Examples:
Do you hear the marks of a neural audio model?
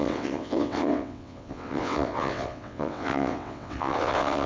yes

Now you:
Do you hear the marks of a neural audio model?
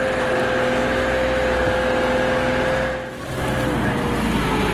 no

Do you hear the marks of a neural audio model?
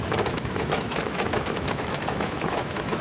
yes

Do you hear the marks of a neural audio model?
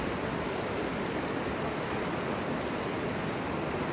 no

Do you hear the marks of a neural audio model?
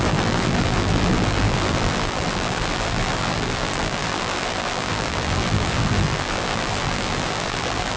yes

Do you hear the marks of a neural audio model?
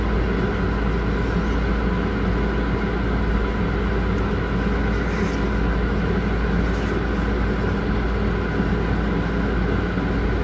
no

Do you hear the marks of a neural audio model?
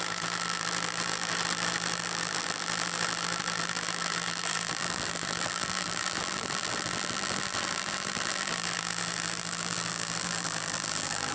yes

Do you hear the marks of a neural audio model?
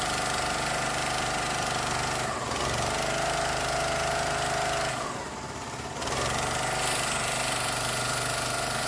no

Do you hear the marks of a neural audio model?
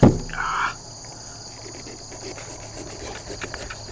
no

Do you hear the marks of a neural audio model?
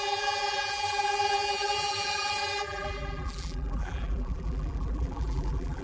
yes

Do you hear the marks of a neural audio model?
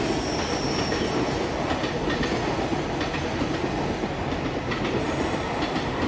no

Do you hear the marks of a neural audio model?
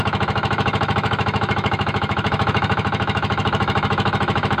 yes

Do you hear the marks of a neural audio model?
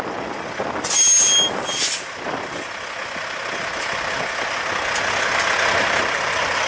no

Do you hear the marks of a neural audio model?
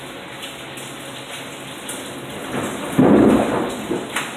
no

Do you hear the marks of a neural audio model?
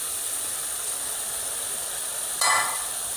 yes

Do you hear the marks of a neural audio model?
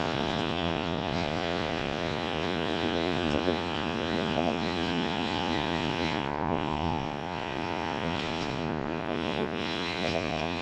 yes